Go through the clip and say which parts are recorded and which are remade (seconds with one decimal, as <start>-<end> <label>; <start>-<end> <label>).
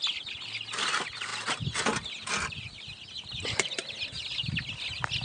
0.0-5.2 recorded